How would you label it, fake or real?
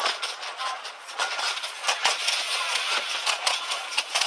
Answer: fake